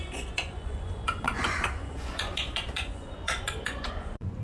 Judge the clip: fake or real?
fake